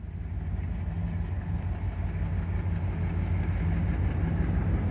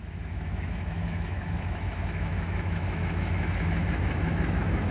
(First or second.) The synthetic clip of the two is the second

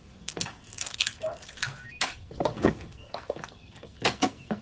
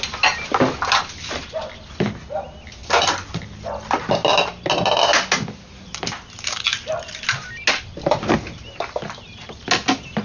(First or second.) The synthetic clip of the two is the first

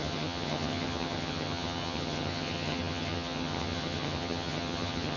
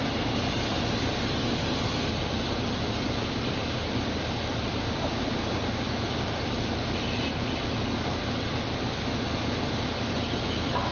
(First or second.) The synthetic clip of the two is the first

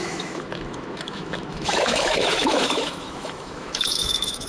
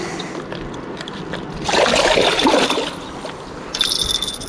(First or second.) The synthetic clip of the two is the first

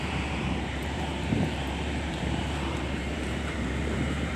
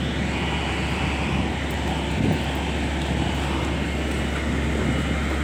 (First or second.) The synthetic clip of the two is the first